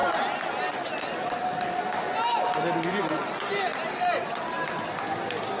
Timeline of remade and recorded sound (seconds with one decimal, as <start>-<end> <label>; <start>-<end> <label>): 0.0-3.7 recorded; 3.7-4.3 remade; 4.3-5.6 recorded